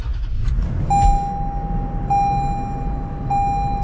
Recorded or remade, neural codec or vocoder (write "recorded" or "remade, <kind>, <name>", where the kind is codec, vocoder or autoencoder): recorded